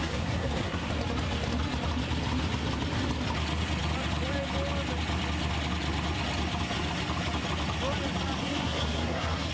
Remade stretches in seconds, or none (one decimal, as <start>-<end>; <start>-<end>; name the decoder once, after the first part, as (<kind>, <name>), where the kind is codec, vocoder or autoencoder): 0.0-0.9 (codec, SNAC); 8.4-9.5